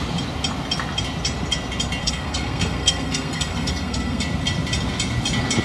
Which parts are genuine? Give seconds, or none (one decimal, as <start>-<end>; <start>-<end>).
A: 0.0-2.0; 4.2-5.6